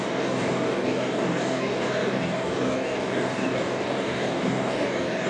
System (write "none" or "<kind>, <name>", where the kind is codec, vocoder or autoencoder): codec, DAC